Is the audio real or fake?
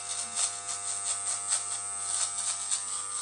real